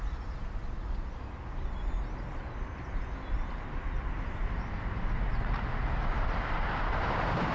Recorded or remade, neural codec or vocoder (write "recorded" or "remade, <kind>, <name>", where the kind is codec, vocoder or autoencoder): recorded